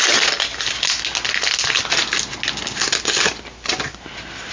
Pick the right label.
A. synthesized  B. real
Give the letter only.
B